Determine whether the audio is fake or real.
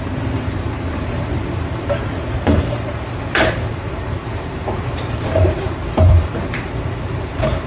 fake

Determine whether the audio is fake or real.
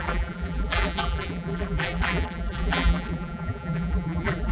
fake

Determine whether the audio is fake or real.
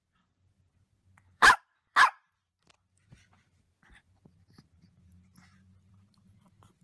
fake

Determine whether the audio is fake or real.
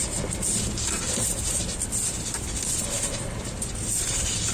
real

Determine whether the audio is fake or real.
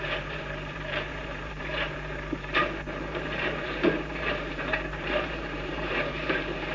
fake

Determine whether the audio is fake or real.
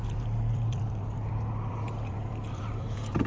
fake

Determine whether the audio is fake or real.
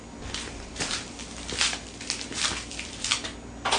fake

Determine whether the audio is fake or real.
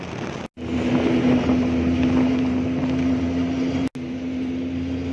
real